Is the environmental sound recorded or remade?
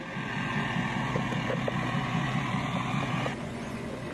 remade